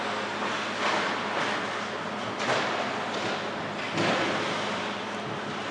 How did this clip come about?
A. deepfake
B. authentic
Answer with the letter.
B